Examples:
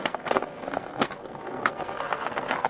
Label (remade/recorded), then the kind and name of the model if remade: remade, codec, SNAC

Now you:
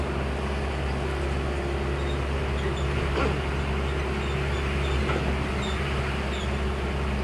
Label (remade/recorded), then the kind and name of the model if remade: recorded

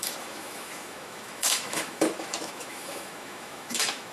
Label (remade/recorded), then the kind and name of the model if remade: remade, autoencoder, DAC-VAE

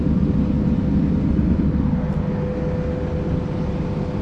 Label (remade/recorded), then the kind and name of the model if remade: recorded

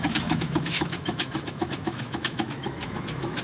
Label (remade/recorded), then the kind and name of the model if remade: remade, autoencoder, DAC-VAE